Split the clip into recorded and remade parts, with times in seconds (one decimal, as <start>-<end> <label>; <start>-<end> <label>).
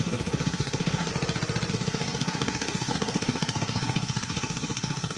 0.0-1.1 remade; 1.1-1.7 recorded; 1.7-5.2 remade